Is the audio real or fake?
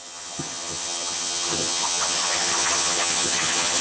fake